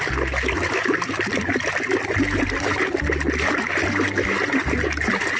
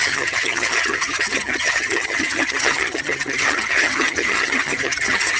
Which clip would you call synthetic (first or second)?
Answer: second